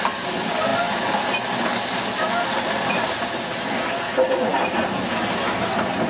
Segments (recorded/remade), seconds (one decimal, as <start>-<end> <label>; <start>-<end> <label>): 0.0-6.1 recorded